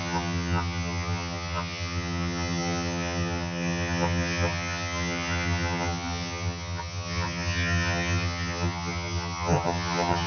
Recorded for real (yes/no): no